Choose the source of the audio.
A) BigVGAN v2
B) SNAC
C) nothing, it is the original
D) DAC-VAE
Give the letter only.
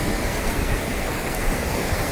B